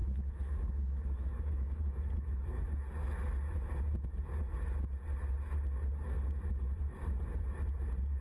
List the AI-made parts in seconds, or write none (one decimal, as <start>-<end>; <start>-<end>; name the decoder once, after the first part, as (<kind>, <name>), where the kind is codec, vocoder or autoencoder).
0.0-2.6 (autoencoder, DAC-VAE)